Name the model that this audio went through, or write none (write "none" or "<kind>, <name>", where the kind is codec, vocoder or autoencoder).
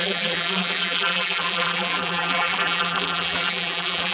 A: vocoder, BigVGAN v2